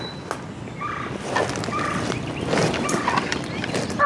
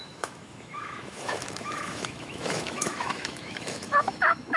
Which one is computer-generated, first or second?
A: second